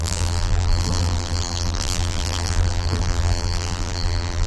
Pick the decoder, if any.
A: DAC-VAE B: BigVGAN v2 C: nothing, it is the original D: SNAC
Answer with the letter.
B